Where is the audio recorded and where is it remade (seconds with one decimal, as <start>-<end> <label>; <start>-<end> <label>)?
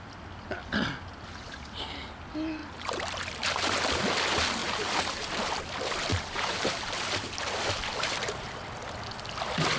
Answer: 0.0-4.6 recorded; 4.6-5.5 remade; 5.5-6.1 recorded; 6.1-6.9 remade; 6.9-9.8 recorded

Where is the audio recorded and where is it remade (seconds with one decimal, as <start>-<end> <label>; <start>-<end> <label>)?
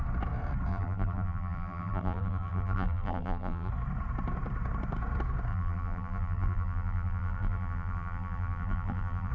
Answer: 0.0-0.7 recorded; 0.7-3.7 remade; 3.7-5.5 recorded; 5.5-9.3 remade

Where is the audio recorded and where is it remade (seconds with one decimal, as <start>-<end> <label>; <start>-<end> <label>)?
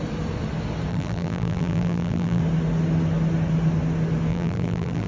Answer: 0.0-0.9 recorded; 0.9-2.4 remade; 2.4-4.3 recorded; 4.3-5.1 remade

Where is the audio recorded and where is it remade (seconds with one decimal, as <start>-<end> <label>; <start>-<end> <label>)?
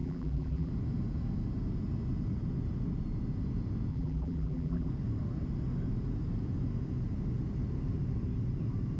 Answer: 0.0-0.7 remade; 0.7-3.9 recorded; 3.9-4.9 remade; 4.9-9.0 recorded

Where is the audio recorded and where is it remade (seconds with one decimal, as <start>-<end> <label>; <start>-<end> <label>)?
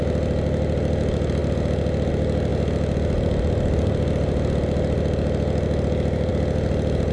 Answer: 0.0-7.1 recorded